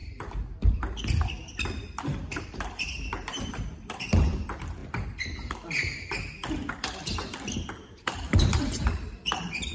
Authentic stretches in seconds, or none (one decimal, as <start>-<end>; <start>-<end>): 0.0-2.4; 4.8-7.7

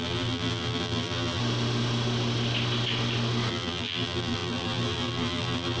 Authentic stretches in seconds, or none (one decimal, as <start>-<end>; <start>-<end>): 1.4-3.5

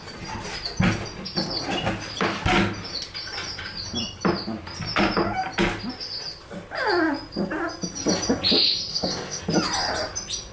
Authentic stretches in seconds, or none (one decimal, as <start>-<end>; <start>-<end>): 0.0-8.9; 9.4-10.5

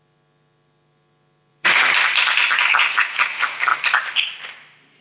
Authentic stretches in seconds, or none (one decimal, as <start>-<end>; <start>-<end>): 0.0-1.5; 3.0-3.7; 4.5-5.0

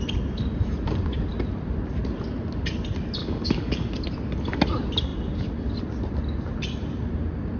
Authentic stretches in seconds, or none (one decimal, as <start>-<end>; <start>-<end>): 0.0-3.2; 3.9-7.6